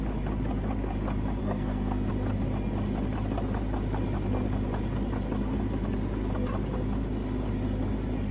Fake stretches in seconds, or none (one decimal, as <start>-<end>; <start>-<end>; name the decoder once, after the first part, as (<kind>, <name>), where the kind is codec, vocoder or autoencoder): 1.4-2.1 (codec, SNAC)